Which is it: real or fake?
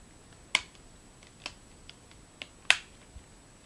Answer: real